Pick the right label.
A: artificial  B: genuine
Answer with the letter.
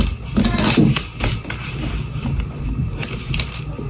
B